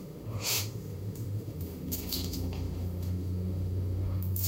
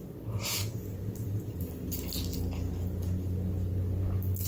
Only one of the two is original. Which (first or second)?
second